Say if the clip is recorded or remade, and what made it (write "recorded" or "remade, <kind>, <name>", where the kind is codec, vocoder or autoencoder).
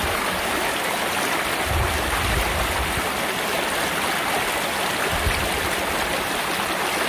recorded